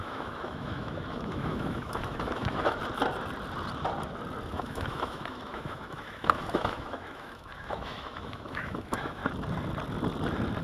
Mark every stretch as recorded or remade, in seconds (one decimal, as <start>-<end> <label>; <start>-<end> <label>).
0.0-2.8 remade; 2.8-4.5 recorded; 4.5-9.2 remade; 9.2-10.6 recorded